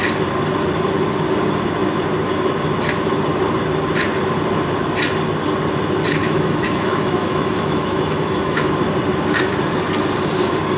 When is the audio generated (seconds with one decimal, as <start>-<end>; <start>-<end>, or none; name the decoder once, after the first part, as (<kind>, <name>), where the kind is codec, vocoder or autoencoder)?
6.2-8.7 (autoencoder, DAC-VAE)